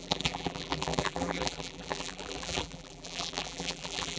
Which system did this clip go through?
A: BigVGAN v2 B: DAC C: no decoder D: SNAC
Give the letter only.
A